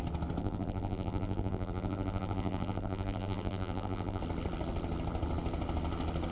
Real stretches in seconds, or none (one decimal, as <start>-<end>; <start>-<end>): 0.0-0.4; 4.2-6.3